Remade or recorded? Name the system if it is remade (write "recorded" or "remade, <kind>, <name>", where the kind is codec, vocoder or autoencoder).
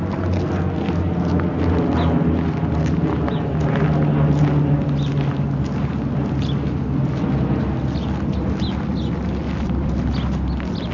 recorded